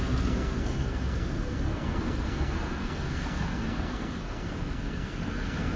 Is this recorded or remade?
remade